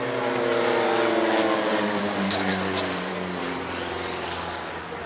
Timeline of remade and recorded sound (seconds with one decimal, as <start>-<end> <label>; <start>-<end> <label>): 0.0-1.7 recorded; 1.7-3.6 remade; 3.6-5.1 recorded